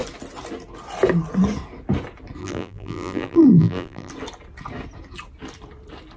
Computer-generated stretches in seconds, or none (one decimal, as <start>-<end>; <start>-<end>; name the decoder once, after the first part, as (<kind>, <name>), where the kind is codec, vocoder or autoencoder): 2.4-4.1 (vocoder, BigVGAN v2)